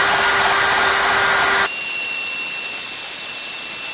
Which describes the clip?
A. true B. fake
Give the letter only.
A